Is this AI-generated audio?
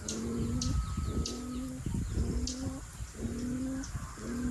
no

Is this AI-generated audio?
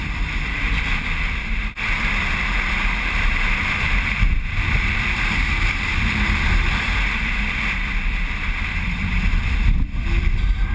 yes